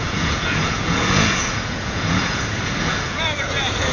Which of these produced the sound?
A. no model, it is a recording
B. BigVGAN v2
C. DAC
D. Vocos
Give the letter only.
D